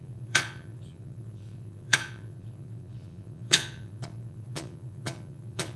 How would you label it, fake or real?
fake